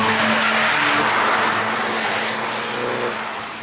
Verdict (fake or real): real